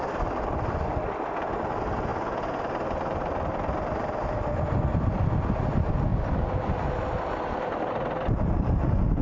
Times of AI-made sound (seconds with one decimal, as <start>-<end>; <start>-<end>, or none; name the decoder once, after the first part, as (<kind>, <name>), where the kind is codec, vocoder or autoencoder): none